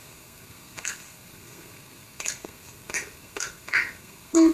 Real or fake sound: fake